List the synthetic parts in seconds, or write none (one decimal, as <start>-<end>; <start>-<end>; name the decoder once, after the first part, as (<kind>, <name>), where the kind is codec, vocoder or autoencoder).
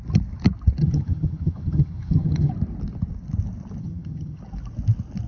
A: 0.8-2.5 (vocoder, HiFi-GAN); 3.8-4.4